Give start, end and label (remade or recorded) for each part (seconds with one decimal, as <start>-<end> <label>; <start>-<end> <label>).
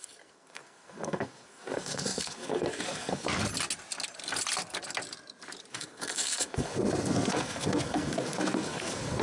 0.0-3.4 remade; 3.4-5.7 recorded; 5.7-9.2 remade